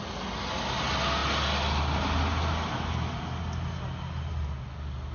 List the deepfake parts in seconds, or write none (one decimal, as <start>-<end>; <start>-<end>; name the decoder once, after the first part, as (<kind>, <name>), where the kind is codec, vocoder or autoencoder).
none